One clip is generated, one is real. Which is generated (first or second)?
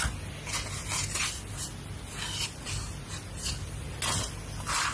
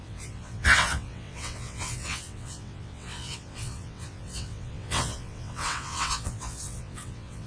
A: second